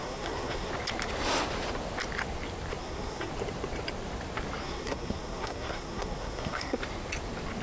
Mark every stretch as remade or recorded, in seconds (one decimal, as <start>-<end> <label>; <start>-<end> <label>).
0.0-0.7 remade; 0.7-2.8 recorded; 2.8-3.3 remade; 3.3-4.6 recorded; 4.6-6.8 remade; 6.8-7.6 recorded